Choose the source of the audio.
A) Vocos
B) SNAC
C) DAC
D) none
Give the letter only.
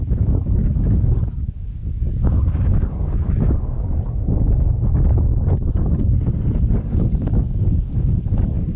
C